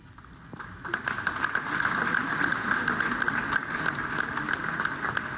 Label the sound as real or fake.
real